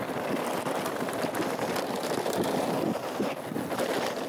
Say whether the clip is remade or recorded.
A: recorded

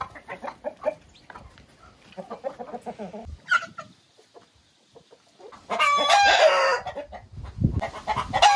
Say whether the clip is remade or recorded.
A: recorded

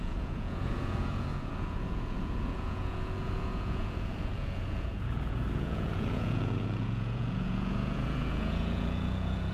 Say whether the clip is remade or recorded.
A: remade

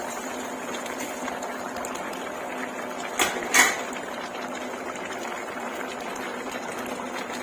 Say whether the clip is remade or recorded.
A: recorded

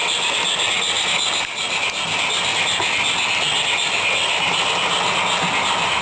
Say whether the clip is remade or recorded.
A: recorded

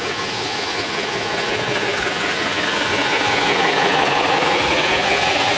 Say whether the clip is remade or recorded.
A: remade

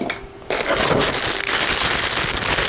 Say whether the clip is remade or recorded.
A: recorded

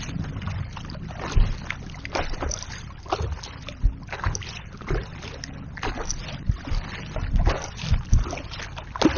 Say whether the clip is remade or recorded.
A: recorded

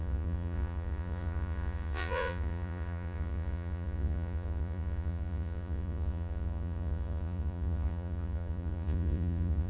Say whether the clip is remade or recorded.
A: remade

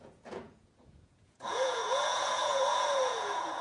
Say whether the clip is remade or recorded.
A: remade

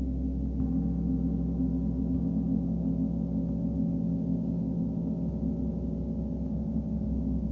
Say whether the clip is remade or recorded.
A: recorded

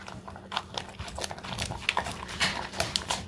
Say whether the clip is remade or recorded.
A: recorded